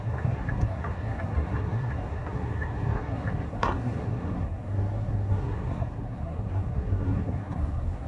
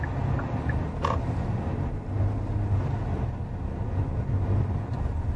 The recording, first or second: second